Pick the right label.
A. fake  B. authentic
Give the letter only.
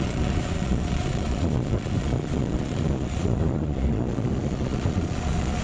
A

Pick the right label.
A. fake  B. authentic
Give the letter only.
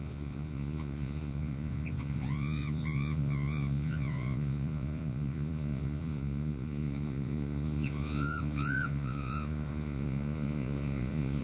A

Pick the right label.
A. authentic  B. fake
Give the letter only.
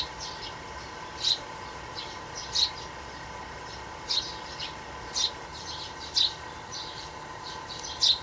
A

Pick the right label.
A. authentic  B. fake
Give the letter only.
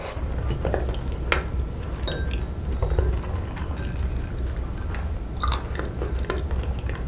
A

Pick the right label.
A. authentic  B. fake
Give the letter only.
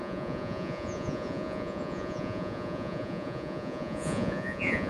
B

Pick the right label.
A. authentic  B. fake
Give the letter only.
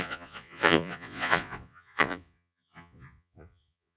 B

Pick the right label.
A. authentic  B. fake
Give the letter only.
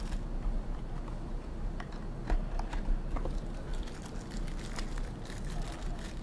A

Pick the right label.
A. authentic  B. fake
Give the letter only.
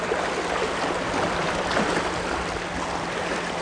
A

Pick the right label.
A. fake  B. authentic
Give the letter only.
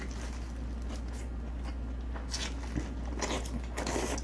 B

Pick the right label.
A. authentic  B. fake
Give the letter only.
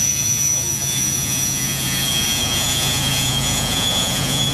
B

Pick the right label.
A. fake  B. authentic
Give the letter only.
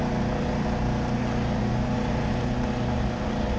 B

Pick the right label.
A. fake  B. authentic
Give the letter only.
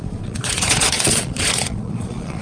A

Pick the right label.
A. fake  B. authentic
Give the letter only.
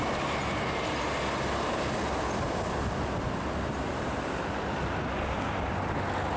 B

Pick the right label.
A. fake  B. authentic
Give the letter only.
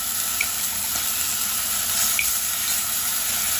B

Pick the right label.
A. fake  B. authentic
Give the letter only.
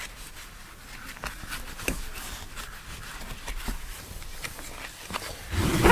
B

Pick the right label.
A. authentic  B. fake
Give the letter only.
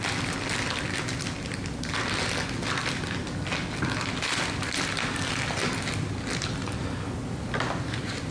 A